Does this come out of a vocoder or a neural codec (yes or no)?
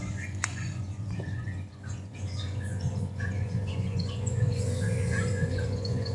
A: yes